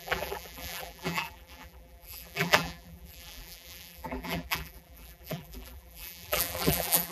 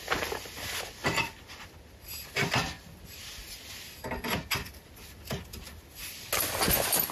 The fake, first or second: first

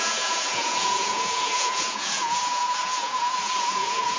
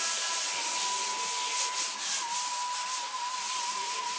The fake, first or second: first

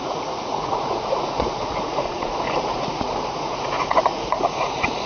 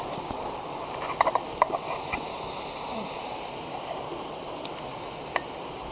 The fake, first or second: first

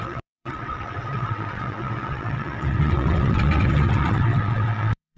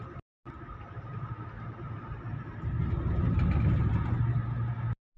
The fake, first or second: first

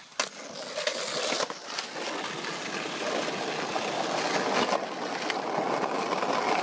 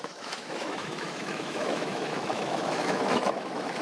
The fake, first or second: second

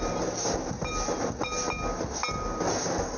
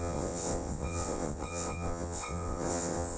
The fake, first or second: second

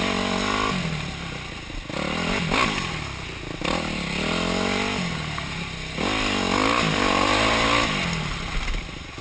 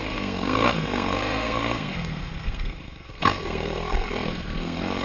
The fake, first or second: second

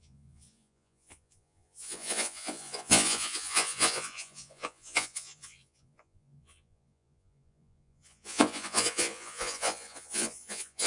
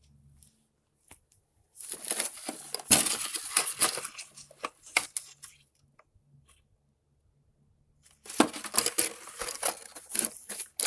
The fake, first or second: first